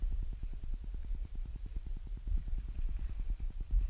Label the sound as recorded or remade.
recorded